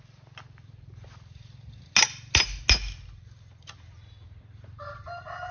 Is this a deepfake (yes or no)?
no